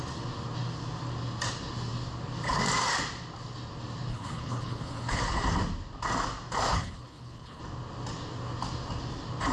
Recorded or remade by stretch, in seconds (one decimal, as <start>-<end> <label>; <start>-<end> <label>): 0.0-4.1 recorded; 4.1-5.2 remade; 5.2-6.7 recorded; 6.7-7.6 remade; 7.6-9.5 recorded